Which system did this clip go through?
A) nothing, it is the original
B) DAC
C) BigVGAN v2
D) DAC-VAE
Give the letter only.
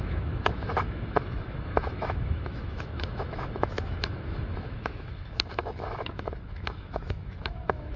D